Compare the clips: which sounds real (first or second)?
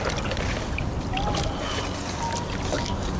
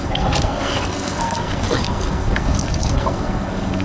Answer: first